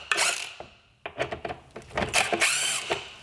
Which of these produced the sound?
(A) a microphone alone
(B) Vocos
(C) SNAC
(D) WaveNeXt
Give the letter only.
A